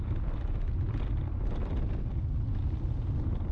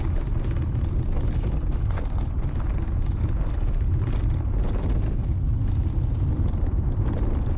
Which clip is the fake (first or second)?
second